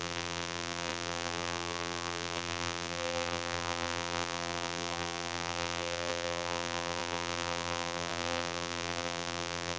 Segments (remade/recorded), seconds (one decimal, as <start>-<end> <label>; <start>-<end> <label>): 0.0-9.8 remade